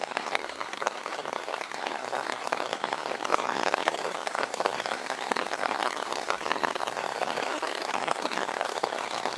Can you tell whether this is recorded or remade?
remade